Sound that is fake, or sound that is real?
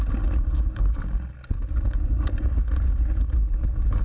real